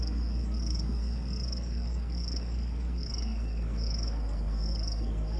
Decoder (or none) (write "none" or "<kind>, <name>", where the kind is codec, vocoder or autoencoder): codec, SNAC